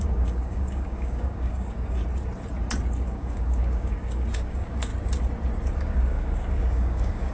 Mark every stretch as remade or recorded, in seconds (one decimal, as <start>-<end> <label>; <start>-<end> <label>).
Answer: 0.0-2.0 remade; 2.0-3.0 recorded; 3.0-4.9 remade; 4.9-5.8 recorded; 5.8-7.3 remade